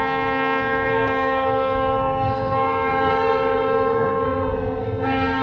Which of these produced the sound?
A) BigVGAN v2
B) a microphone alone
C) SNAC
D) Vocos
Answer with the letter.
C